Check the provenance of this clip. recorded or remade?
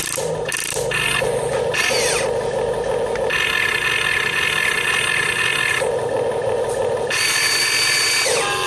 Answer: recorded